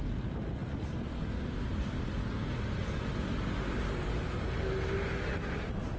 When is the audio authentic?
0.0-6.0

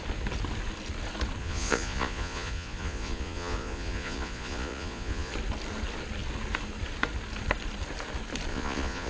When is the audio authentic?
0.0-1.4; 5.3-8.5

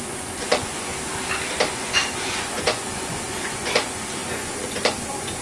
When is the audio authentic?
0.9-1.7

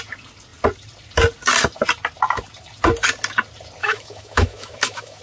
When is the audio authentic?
0.0-3.8

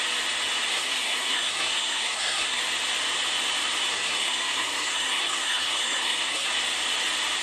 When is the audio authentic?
0.0-0.7; 2.6-3.9; 6.5-7.4